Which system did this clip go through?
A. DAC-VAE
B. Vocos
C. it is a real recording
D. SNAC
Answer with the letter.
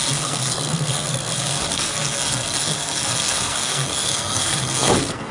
D